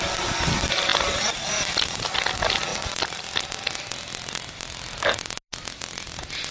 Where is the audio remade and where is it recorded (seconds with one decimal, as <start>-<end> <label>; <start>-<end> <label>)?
0.0-6.5 recorded